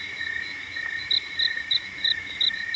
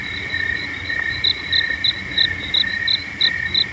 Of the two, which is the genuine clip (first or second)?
second